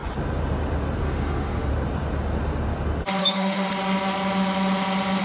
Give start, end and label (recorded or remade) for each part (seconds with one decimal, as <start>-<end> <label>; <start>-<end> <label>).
0.0-1.0 recorded; 1.0-1.7 remade; 1.7-3.2 recorded; 3.2-3.7 remade; 3.7-5.2 recorded